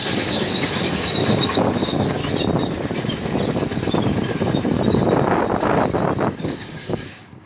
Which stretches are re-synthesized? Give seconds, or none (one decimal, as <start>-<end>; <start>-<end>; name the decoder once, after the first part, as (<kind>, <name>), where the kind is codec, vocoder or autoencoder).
0.0-2.2 (codec, DAC); 6.4-7.5